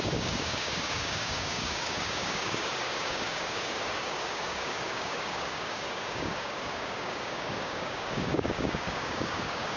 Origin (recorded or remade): remade